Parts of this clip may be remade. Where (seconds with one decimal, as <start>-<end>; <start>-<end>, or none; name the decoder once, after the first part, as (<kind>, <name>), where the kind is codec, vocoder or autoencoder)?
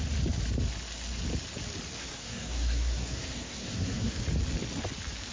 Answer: 2.0-4.2 (codec, SNAC)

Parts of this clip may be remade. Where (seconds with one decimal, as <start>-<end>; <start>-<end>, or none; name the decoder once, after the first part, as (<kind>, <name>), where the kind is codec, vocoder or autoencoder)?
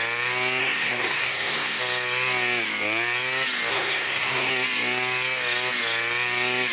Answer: 0.6-1.8 (codec, SNAC); 3.7-4.5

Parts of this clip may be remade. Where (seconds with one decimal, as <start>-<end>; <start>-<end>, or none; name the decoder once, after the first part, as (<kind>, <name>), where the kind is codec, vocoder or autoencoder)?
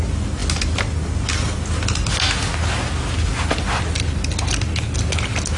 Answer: none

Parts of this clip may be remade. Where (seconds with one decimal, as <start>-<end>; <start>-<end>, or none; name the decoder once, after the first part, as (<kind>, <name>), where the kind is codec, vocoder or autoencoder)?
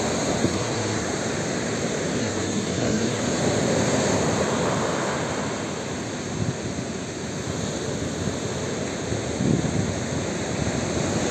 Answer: 0.4-1.0 (codec, SNAC); 2.2-3.2